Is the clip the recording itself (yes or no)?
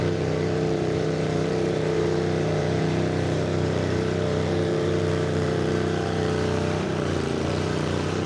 no